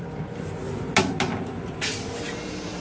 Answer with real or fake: real